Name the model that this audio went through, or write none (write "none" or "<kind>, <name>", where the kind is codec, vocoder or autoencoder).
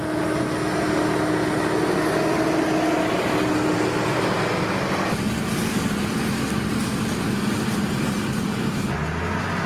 none